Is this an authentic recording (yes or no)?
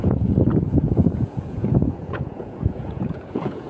no